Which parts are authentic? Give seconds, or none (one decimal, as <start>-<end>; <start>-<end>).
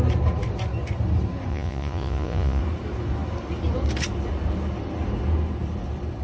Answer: 0.0-1.5; 2.6-6.2